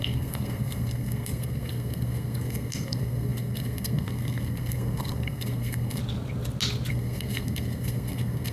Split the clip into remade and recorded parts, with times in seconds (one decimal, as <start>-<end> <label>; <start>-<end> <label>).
0.0-6.0 remade; 6.0-6.9 recorded; 6.9-8.5 remade